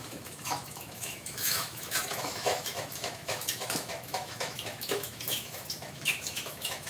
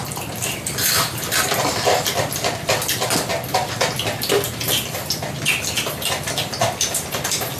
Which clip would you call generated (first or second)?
first